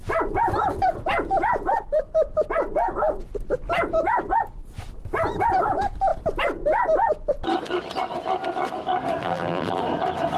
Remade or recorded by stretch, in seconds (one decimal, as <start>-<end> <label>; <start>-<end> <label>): 0.0-9.2 recorded; 9.2-9.8 remade; 9.8-10.4 recorded